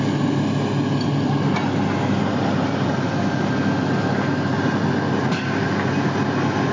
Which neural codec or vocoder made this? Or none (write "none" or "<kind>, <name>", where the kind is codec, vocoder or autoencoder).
none